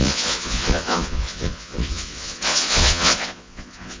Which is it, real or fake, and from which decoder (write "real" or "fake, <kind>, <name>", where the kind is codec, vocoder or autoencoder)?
fake, vocoder, Vocos